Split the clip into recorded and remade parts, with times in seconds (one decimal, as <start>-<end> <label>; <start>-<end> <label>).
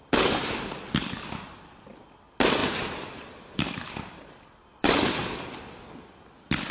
0.0-2.6 recorded; 2.6-5.1 remade; 5.1-6.7 recorded